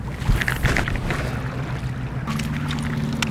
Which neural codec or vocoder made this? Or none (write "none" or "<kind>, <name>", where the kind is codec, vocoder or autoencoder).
none